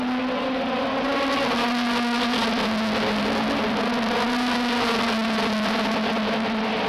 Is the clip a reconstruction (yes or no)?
no